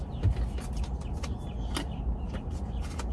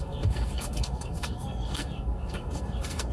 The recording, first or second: first